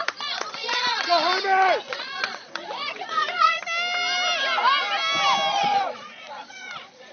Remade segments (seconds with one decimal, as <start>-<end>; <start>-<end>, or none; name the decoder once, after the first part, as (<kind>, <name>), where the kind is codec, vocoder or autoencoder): 0.0-1.3 (vocoder, Vocos); 1.8-3.6; 5.5-7.1